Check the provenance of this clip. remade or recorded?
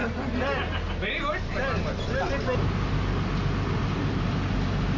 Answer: recorded